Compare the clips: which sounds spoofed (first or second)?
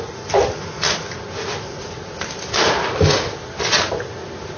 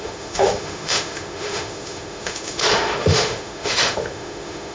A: second